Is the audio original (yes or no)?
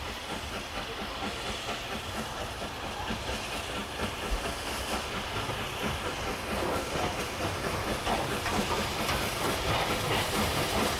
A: yes